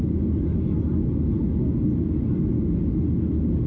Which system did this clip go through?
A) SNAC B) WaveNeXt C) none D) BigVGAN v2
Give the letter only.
C